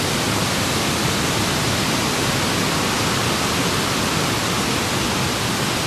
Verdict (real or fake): real